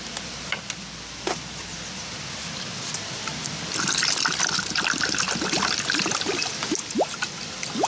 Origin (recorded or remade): recorded